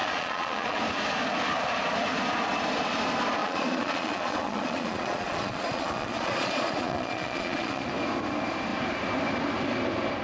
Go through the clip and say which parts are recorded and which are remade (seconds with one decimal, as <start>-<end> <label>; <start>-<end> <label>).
0.0-0.8 remade; 0.8-3.4 recorded; 3.4-7.9 remade; 7.9-10.2 recorded